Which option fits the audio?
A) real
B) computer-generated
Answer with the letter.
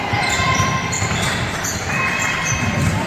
B